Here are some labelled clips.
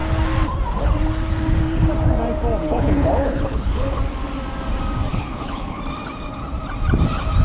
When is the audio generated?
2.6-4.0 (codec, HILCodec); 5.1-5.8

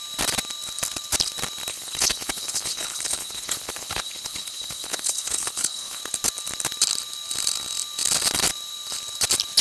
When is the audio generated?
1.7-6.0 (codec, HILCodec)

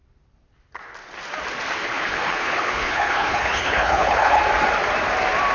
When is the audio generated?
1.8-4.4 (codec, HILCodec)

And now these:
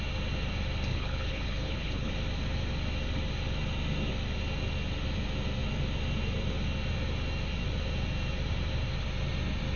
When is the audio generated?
0.9-2.1 (codec, HILCodec)

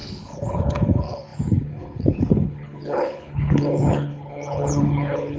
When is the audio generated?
0.0-5.4 (codec, HILCodec)